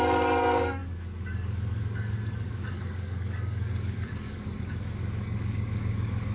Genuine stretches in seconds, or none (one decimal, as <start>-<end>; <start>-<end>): none